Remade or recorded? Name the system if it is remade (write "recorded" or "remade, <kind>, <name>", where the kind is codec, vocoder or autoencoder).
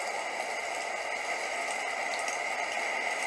recorded